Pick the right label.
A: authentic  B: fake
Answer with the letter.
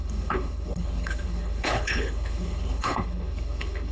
B